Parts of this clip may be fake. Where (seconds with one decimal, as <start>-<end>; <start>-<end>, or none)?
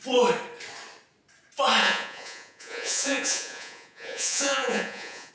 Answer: 1.8-5.3